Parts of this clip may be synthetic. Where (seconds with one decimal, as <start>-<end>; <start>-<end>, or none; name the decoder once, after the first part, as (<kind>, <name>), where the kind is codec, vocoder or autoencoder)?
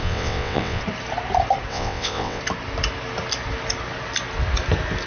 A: 0.0-0.8 (vocoder, WaveNeXt); 1.7-2.4